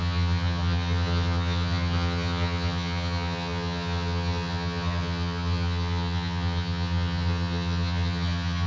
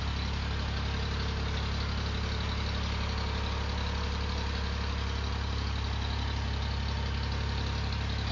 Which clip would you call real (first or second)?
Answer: second